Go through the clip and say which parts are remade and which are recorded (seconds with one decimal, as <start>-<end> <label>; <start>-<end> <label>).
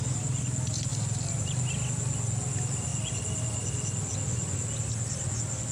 0.0-5.7 recorded